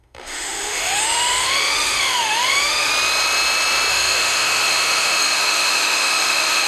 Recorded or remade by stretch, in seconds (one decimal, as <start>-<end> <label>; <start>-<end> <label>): 0.0-2.9 remade; 2.9-3.9 recorded; 3.9-6.7 remade